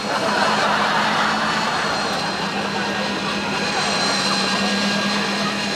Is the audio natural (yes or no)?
yes